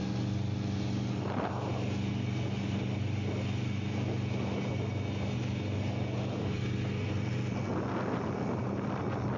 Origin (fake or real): real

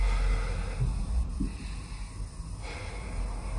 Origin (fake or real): real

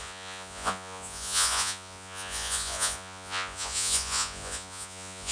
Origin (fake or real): fake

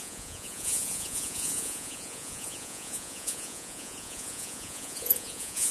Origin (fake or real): fake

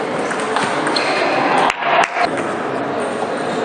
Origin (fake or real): real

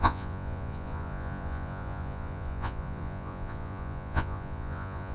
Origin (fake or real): fake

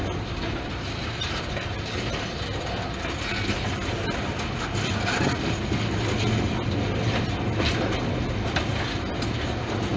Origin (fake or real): real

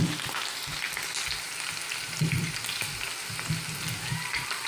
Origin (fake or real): real